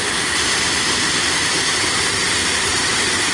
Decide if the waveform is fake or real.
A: real